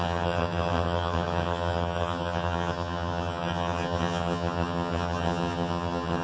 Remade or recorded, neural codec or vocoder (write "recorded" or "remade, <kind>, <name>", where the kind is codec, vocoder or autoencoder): remade, vocoder, HiFi-GAN